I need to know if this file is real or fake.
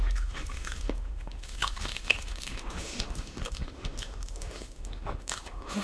fake